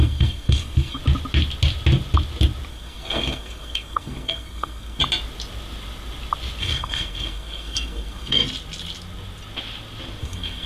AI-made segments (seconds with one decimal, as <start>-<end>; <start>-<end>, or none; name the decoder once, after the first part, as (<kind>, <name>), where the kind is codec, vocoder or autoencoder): 0.0-1.0 (codec, SNAC); 2.7-5.0; 6.6-8.4; 10.2-10.7

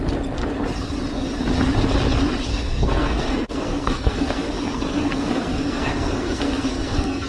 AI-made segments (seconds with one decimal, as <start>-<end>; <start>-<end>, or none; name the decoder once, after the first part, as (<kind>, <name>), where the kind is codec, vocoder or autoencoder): 2.5-7.3 (codec, SNAC)

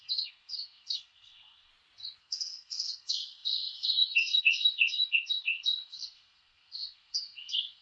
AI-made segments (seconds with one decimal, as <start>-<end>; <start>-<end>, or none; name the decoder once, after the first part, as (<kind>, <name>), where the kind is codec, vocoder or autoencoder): 0.0-1.7 (codec, SNAC); 2.2-7.8

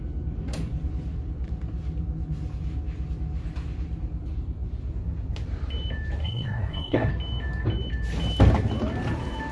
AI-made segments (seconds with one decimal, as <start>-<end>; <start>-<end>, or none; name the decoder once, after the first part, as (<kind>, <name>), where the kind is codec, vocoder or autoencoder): 6.2-7.1 (codec, SNAC)

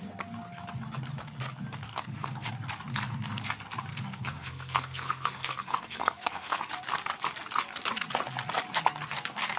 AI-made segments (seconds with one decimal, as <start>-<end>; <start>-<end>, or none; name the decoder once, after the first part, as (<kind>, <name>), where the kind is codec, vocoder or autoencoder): 1.9-2.5 (codec, SNAC); 2.9-3.4; 3.9-6.6

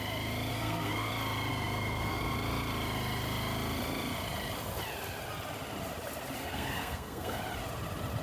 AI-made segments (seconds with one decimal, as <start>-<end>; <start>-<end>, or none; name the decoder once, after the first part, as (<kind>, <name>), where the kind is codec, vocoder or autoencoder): 0.5-1.1 (codec, SNAC); 1.5-2.2; 6.4-7.4

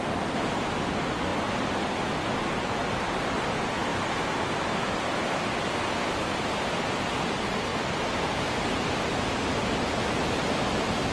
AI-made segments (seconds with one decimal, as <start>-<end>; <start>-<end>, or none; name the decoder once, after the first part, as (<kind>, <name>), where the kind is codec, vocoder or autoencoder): none